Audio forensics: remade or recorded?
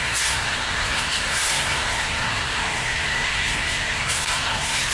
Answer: remade